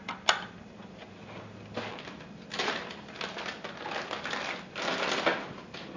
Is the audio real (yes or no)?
yes